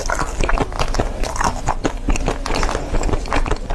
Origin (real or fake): real